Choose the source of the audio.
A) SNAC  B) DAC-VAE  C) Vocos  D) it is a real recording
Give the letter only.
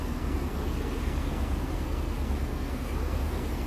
A